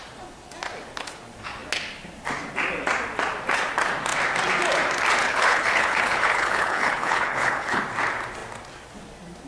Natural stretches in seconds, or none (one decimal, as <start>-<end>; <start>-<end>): 0.0-5.2; 7.8-9.5